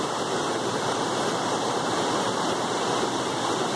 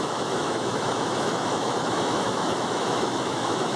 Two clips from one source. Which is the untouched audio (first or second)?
first